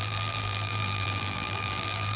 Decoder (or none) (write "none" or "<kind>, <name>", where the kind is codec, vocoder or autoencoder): vocoder, BigVGAN v2